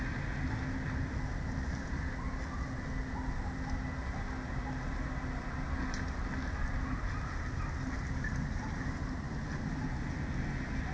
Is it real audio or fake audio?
real